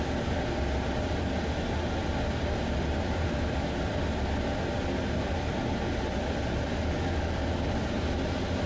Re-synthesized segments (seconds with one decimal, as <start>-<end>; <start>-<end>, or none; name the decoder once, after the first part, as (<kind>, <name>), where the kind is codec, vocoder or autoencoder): 6.7-7.7 (codec, DAC)